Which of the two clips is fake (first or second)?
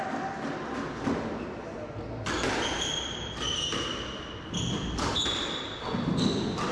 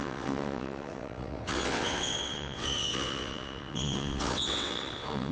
second